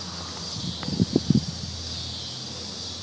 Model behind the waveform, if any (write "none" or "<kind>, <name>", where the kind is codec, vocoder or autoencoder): none